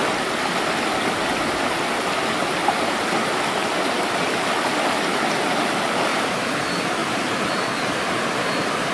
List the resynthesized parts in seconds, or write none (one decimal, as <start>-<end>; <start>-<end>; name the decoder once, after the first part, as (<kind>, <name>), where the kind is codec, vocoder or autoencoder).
3.6-4.4 (vocoder, BigVGAN v2); 6.1-6.6; 7.0-8.9